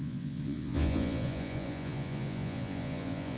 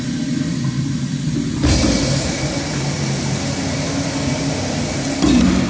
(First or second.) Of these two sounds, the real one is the second